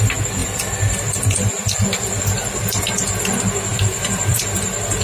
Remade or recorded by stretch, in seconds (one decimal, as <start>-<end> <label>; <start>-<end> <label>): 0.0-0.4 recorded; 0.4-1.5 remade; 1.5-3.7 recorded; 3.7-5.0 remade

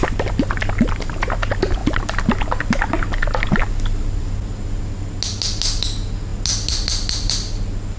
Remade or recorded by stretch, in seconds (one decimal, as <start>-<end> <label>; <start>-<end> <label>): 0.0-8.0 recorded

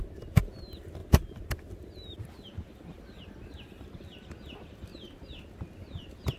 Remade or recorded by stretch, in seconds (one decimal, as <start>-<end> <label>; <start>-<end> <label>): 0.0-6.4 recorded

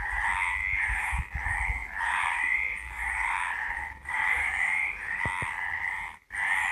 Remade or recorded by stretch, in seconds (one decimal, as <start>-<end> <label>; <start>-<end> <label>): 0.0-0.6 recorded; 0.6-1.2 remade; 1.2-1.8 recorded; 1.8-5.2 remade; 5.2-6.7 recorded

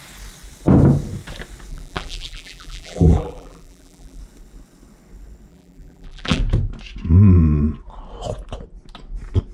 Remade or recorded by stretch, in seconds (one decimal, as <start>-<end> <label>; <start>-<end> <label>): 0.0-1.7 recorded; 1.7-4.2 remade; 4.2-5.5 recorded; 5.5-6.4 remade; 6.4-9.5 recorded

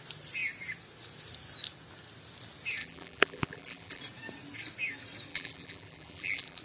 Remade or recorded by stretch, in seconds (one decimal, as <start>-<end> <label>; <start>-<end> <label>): 0.0-2.8 recorded; 2.8-4.0 remade; 4.0-5.3 recorded; 5.3-6.6 remade